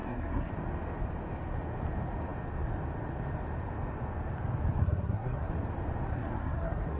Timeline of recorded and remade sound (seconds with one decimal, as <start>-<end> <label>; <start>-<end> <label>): 0.0-0.5 remade; 0.5-4.8 recorded; 4.8-5.5 remade; 5.5-6.1 recorded; 6.1-7.0 remade